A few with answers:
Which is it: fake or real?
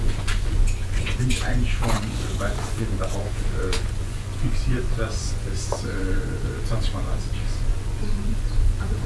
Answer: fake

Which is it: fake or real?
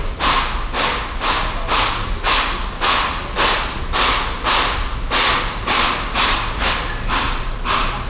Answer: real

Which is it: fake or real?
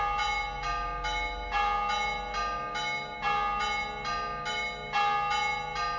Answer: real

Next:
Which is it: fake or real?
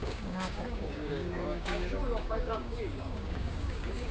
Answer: fake